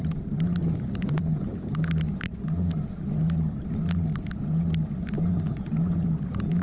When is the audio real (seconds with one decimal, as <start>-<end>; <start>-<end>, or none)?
1.5-5.5